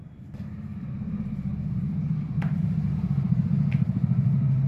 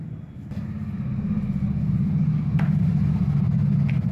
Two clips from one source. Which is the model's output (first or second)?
first